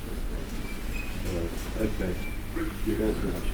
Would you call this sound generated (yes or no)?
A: no